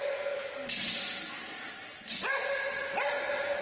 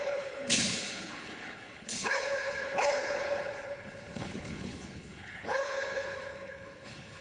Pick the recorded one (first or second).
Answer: first